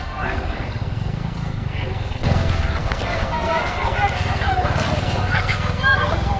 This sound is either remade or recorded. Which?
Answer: remade